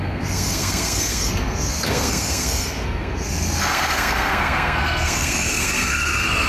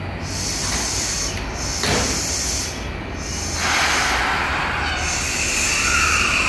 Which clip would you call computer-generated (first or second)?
first